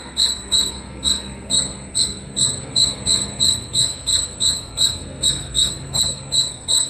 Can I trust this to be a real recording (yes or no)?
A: no